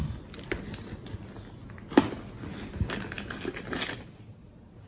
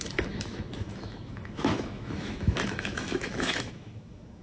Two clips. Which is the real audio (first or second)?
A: first